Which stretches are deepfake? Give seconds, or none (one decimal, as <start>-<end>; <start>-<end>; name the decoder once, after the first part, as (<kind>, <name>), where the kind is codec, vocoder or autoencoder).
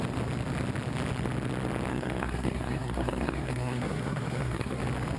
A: 1.9-4.8 (codec, SNAC)